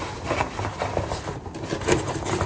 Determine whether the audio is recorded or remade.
recorded